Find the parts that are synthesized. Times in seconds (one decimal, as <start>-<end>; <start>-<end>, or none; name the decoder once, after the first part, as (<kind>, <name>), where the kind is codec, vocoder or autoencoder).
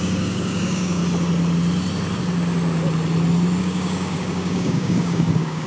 0.0-1.0 (codec, DAC); 3.6-5.7